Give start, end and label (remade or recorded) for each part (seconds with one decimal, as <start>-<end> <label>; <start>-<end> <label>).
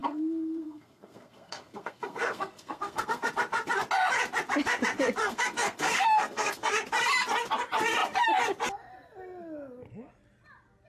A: 0.0-3.3 remade; 3.3-5.2 recorded; 5.2-6.7 remade; 6.7-10.9 recorded